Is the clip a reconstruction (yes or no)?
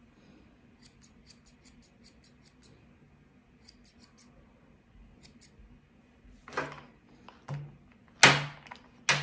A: no